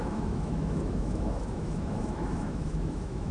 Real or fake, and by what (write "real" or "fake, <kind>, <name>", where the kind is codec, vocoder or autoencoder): fake, autoencoder, DAC-VAE